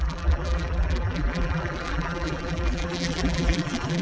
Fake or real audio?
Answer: fake